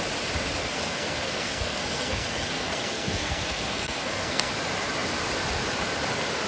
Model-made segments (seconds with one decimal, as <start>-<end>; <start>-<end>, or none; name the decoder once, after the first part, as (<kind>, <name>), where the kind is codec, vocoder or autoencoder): 0.6-4.5 (codec, SNAC)